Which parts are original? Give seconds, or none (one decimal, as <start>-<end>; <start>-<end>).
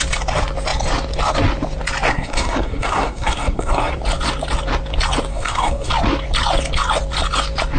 0.0-2.1; 3.9-5.3; 5.9-7.8